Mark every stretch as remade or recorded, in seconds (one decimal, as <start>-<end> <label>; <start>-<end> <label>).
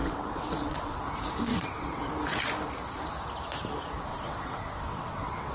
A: 0.0-1.0 remade; 1.0-1.5 recorded; 1.5-2.0 remade; 2.0-4.1 recorded; 4.1-5.5 remade